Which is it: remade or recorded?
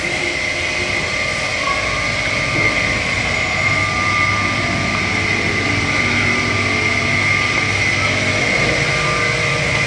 recorded